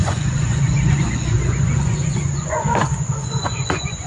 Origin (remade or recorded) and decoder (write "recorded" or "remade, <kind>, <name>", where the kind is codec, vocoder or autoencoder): remade, vocoder, Vocos